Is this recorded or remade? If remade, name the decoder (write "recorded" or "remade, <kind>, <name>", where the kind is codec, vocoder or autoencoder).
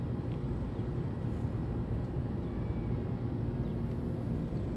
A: recorded